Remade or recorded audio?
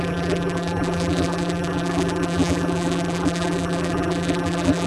remade